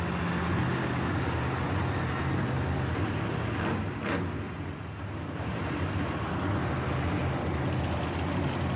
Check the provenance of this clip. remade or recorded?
recorded